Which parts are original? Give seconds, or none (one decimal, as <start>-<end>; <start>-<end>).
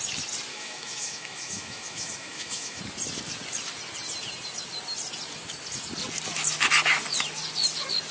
0.0-0.5; 2.8-8.1